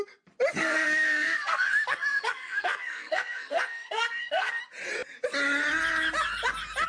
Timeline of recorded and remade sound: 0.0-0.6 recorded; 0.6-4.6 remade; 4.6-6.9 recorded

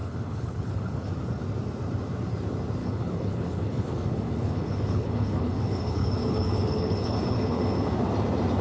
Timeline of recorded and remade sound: 0.0-1.1 remade; 1.1-2.8 recorded; 2.8-7.6 remade; 7.6-8.6 recorded

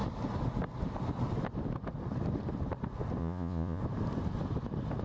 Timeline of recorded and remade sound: 0.0-3.2 recorded; 3.2-3.8 remade; 3.8-5.0 recorded

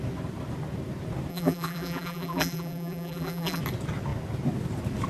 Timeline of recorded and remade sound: 0.0-1.3 recorded; 1.3-3.6 remade; 3.6-5.1 recorded

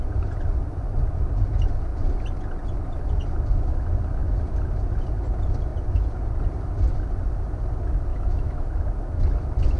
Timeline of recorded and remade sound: 0.0-8.1 recorded; 8.1-8.7 remade; 8.7-9.8 recorded